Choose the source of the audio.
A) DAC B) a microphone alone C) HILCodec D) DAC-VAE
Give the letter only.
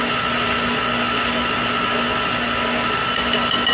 B